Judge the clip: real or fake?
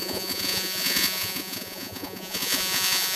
fake